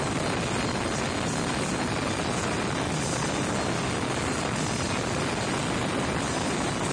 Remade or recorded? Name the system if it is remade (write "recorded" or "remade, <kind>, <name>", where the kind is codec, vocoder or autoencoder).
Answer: recorded